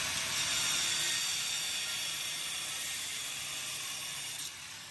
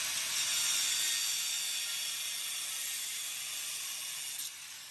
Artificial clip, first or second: first